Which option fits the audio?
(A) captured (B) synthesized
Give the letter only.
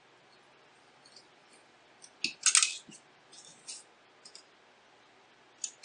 A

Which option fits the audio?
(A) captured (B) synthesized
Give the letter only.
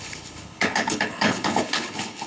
B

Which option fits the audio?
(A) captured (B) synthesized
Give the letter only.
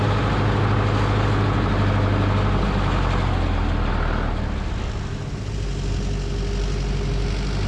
A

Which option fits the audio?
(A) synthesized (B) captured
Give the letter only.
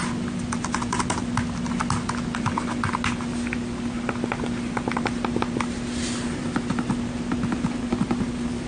B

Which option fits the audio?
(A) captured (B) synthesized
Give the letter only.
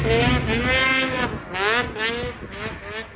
A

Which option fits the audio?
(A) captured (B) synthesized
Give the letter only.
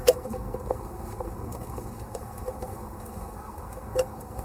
B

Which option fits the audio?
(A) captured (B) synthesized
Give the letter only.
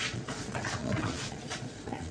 B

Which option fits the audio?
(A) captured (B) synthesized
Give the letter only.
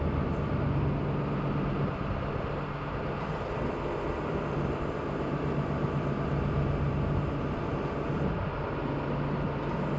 A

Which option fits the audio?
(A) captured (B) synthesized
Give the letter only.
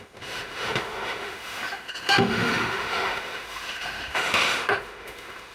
B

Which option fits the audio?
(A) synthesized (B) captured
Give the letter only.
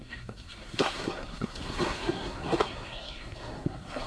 A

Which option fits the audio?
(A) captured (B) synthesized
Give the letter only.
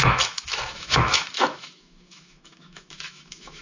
B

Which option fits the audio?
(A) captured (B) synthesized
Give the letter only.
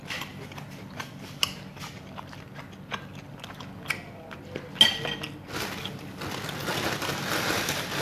A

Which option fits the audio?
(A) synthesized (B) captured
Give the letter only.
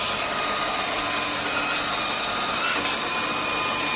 B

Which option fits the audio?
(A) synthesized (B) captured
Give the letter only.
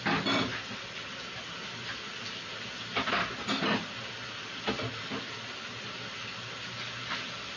B